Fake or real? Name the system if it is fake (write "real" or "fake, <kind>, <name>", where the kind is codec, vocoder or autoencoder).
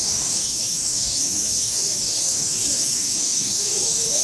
fake, codec, DAC